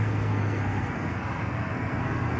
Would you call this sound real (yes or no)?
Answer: no